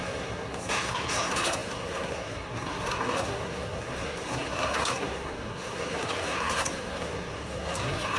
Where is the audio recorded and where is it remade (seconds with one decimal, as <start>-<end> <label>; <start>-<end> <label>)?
0.0-8.2 remade